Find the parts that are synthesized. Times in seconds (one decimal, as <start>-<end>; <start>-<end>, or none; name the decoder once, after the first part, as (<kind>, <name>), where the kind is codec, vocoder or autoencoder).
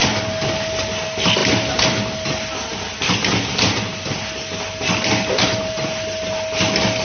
none